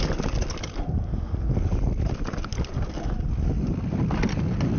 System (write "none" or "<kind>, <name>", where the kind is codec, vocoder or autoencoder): none